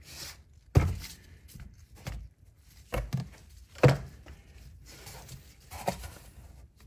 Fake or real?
real